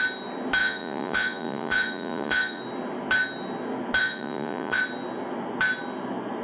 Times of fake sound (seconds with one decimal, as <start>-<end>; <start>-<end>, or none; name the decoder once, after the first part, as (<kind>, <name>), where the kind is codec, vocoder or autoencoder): 0.6-2.6 (vocoder, Vocos); 4.0-4.8